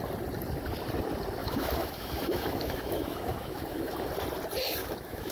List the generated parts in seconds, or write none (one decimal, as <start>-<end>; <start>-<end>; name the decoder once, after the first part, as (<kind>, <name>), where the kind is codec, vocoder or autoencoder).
1.4-4.1 (autoencoder, DAC-VAE); 4.8-5.3